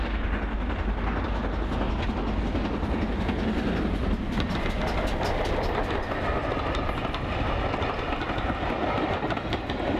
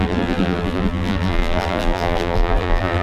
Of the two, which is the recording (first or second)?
first